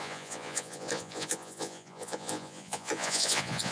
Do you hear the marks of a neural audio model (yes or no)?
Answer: yes